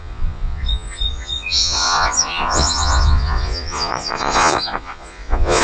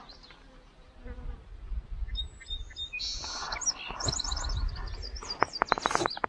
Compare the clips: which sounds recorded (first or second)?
second